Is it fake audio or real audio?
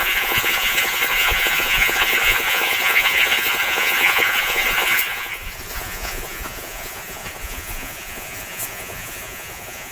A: fake